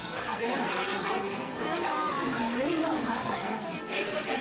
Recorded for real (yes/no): no